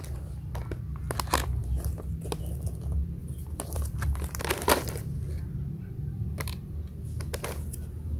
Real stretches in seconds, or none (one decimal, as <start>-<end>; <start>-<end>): 0.0-1.6; 2.4-3.2; 7.0-8.2